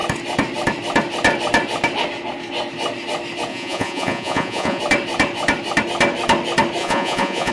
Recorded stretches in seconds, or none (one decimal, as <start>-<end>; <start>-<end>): 0.0-3.5; 4.8-6.8